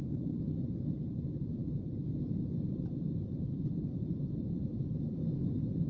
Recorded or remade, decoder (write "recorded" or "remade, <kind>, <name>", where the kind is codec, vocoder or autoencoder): recorded